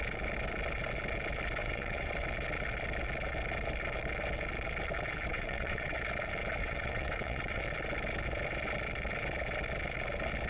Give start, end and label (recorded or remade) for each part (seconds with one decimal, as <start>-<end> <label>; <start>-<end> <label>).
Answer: 0.0-1.6 recorded; 1.6-2.1 remade; 2.1-5.3 recorded; 5.3-6.0 remade; 6.0-6.6 recorded; 6.6-7.6 remade; 7.6-10.5 recorded